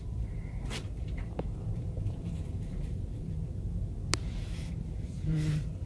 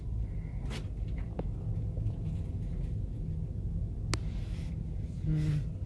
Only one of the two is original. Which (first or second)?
second